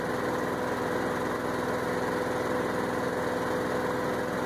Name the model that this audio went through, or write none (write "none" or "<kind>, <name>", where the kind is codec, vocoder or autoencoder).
none